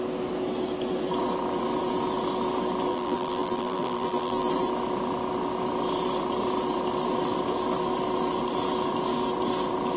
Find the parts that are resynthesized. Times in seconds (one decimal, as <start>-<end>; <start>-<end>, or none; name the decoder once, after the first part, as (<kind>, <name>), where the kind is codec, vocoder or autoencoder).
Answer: 2.9-4.5 (vocoder, BigVGAN v2)